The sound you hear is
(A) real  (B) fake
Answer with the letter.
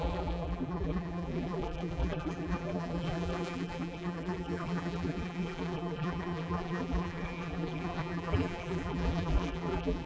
B